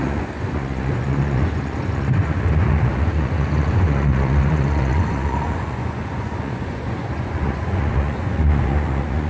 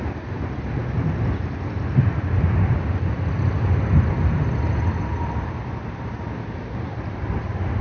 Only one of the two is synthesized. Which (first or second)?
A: first